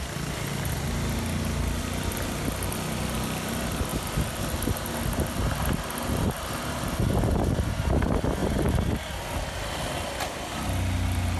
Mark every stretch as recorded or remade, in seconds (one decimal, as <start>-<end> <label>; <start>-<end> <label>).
0.0-11.4 recorded